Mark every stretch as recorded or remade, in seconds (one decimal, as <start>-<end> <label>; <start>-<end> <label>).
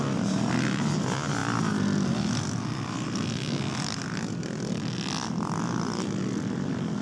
0.0-7.0 recorded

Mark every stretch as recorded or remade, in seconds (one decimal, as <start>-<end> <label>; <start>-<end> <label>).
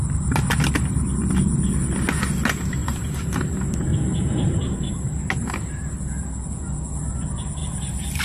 0.0-2.8 recorded; 2.8-3.5 remade; 3.5-3.9 recorded; 3.9-5.6 remade; 5.6-7.6 recorded; 7.6-8.2 remade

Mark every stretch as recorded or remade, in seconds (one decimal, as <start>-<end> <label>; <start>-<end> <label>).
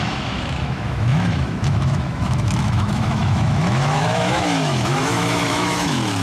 0.0-6.2 remade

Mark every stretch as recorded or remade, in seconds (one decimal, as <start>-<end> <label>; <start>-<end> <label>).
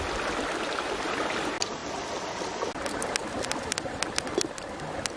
0.0-5.2 recorded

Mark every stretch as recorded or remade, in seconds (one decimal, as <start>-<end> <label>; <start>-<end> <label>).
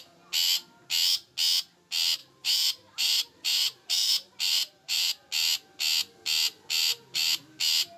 0.0-2.2 recorded; 2.2-5.3 remade; 5.3-8.0 recorded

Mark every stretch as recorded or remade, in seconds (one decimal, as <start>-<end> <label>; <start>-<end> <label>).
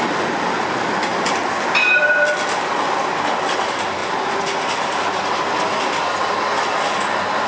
0.0-7.5 recorded